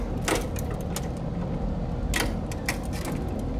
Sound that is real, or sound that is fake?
real